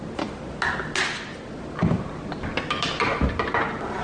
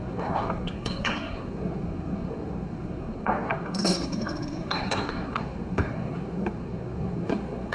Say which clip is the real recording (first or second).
first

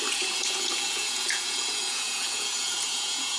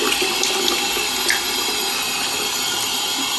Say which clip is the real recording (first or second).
second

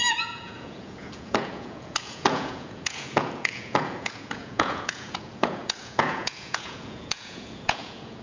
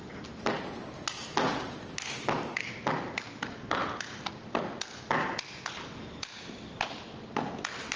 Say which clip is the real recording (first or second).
second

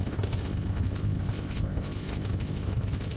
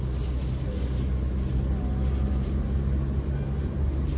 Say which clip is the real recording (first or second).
second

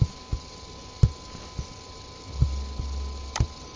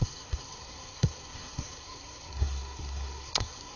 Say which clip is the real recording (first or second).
first